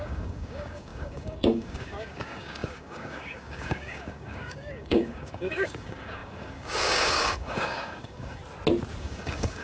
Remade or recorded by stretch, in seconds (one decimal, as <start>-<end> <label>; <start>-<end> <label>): 0.0-8.4 remade; 8.4-9.0 recorded; 9.0-9.6 remade